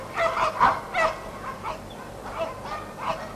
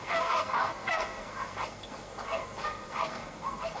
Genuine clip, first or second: first